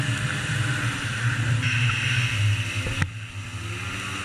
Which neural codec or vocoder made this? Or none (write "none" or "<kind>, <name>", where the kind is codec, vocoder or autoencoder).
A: none